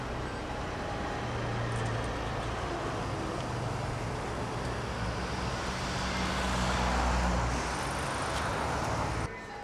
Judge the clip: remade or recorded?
recorded